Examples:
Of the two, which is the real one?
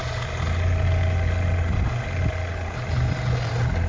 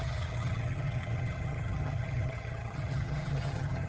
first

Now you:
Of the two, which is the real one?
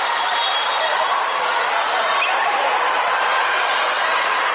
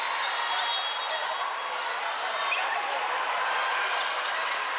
second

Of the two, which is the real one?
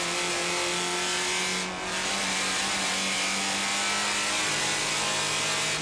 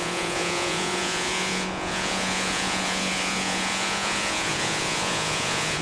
first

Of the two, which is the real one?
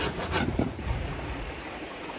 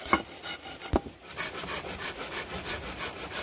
second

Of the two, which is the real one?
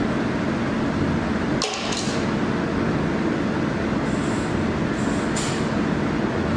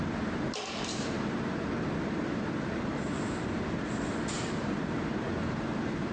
first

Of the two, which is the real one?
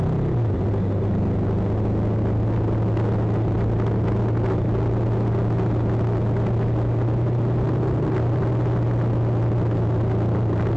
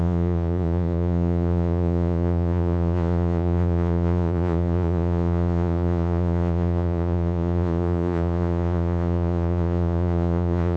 first